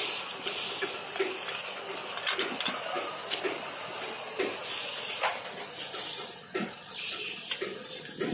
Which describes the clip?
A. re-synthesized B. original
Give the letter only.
B